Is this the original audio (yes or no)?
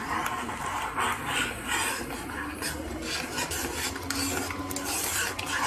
yes